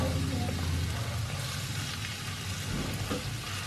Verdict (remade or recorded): recorded